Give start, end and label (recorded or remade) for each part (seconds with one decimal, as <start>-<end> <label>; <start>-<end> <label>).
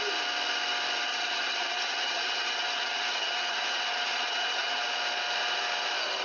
0.0-1.1 recorded; 1.1-4.8 remade; 4.8-6.2 recorded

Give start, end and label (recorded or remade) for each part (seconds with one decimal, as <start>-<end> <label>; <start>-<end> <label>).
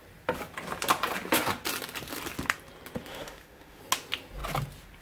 0.0-3.1 recorded; 3.1-3.8 remade; 3.8-5.0 recorded